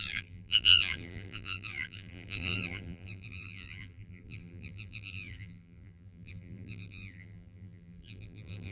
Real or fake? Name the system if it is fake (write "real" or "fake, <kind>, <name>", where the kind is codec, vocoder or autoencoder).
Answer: fake, vocoder, BigVGAN v2